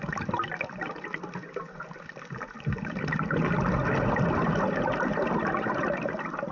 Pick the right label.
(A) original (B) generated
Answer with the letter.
A